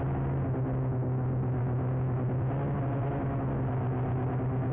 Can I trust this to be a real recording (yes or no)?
yes